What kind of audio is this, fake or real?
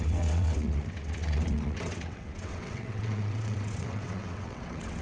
fake